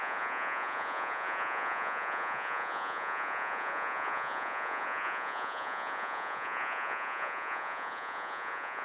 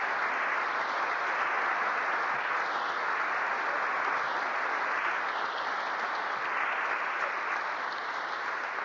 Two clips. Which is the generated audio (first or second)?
first